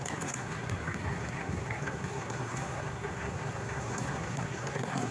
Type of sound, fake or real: fake